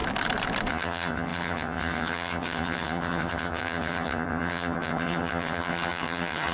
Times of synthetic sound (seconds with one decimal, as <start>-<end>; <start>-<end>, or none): 0.7-6.5